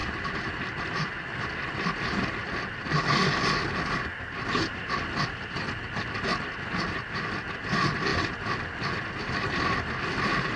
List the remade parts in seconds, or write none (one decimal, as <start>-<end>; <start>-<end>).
0.0-0.5; 2.4-3.5